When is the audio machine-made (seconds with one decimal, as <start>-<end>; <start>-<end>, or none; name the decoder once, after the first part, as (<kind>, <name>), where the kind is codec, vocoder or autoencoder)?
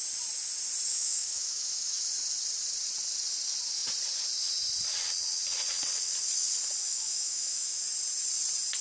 0.9-2.0 (autoencoder, DAC-VAE); 6.8-7.8